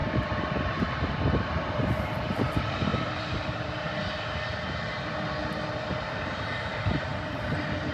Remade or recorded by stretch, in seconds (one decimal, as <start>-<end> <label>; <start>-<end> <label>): 0.0-2.9 remade; 2.9-5.8 recorded; 5.8-7.1 remade; 7.1-7.9 recorded